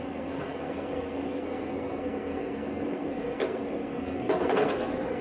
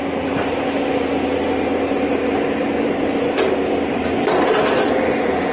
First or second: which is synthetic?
first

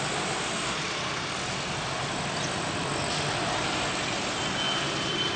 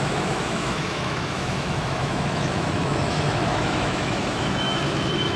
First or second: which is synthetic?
second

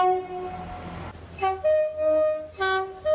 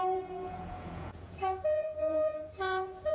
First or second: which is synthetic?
second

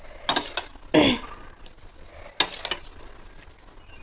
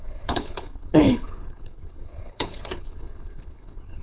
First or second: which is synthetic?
second